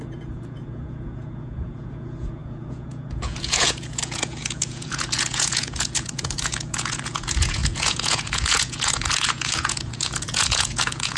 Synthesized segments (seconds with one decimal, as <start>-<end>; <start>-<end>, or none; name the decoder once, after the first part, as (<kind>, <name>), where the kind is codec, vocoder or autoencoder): 0.0-11.2 (vocoder, Vocos)